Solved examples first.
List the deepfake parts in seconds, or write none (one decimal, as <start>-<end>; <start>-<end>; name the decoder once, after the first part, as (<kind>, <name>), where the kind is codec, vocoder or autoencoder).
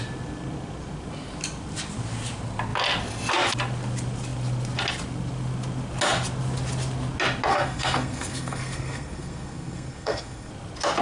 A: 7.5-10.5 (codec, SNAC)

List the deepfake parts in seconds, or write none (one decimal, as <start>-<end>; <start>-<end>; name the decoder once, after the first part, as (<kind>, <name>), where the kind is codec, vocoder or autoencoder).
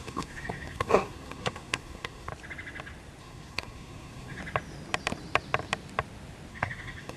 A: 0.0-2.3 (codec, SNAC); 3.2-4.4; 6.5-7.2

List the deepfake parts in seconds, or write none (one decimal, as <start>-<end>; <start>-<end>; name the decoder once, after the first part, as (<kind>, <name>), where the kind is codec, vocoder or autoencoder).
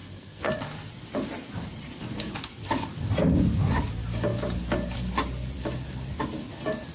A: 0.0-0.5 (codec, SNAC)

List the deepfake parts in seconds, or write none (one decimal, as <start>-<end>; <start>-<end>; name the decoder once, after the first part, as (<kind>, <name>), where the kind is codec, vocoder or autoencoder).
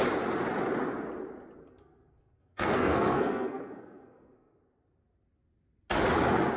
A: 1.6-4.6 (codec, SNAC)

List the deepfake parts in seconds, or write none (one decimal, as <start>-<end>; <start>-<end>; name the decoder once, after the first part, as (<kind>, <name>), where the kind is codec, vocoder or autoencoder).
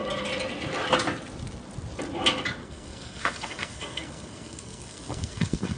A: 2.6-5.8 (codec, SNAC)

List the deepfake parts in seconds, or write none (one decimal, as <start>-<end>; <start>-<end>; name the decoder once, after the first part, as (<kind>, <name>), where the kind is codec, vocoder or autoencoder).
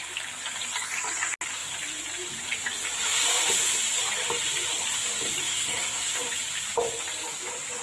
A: 5.4-6.2 (codec, SNAC)